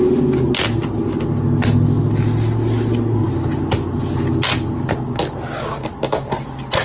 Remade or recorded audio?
recorded